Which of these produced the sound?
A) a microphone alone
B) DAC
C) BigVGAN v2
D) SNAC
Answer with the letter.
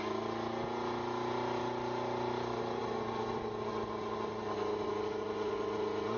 A